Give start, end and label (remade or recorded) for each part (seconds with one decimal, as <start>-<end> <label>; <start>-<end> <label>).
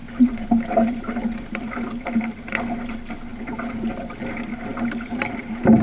0.0-2.0 remade; 2.0-3.3 recorded; 3.3-4.1 remade; 4.1-5.8 recorded